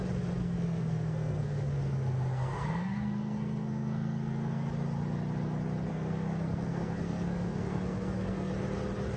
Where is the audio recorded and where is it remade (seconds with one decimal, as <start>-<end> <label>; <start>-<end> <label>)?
0.0-0.4 recorded; 0.4-4.7 remade; 4.7-5.9 recorded; 5.9-8.5 remade; 8.5-9.2 recorded